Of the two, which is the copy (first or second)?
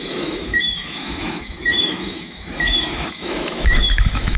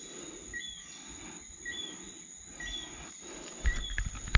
first